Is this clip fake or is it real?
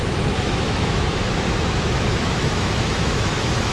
fake